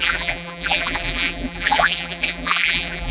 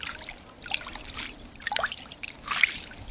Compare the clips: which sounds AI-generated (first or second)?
first